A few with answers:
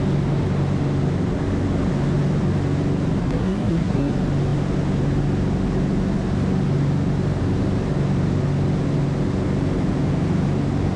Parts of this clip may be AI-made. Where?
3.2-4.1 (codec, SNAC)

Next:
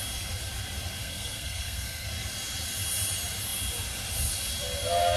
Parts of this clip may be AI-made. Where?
1.0-2.1 (codec, SNAC)